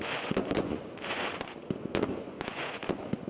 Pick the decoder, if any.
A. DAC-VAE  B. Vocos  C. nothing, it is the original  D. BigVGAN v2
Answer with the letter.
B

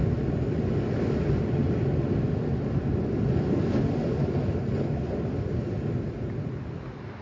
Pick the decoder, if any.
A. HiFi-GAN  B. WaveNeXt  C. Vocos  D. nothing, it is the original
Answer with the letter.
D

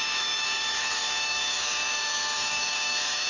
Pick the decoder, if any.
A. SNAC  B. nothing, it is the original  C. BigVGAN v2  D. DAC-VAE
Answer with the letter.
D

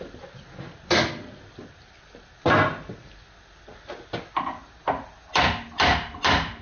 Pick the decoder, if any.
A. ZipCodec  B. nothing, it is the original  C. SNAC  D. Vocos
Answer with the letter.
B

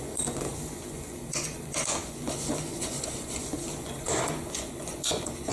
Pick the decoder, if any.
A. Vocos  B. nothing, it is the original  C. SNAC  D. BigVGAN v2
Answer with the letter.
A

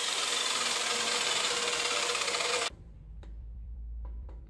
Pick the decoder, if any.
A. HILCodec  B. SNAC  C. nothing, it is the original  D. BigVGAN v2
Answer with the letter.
D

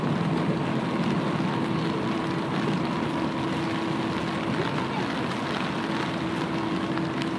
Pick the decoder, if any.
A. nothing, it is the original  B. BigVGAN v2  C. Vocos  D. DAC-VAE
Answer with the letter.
A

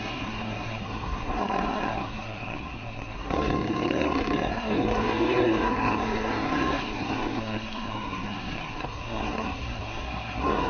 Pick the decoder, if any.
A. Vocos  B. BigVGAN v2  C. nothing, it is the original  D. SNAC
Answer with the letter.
D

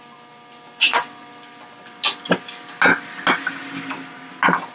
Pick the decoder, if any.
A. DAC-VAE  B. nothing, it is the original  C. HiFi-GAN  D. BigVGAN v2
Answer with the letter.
B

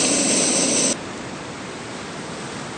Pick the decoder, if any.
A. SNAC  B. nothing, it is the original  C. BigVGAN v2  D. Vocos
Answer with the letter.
B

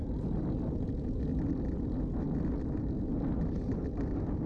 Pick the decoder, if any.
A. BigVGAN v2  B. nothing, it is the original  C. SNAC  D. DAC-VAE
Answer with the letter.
B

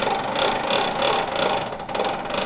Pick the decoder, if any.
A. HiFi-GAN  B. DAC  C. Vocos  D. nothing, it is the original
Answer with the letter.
D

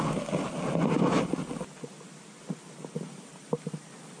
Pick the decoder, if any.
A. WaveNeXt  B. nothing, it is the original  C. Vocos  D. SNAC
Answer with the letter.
B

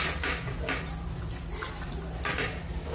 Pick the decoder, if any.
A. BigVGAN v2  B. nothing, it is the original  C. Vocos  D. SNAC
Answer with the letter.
B